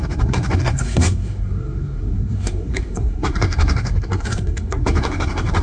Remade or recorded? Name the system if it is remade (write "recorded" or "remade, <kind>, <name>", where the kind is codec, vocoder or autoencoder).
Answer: remade, codec, SNAC